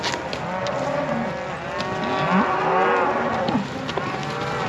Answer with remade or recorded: recorded